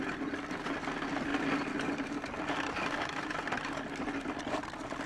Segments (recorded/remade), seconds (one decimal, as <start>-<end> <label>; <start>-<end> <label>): 0.0-5.1 recorded